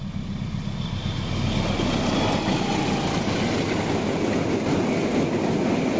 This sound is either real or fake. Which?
real